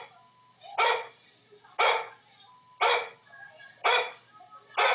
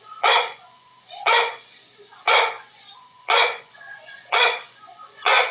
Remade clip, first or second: second